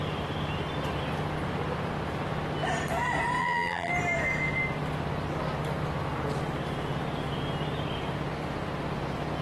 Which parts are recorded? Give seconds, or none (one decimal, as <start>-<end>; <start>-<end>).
0.0-3.4; 3.9-9.4

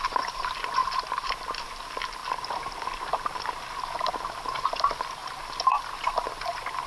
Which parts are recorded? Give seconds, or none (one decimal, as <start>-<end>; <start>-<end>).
0.0-0.8; 1.3-2.2; 3.8-5.2; 5.8-6.9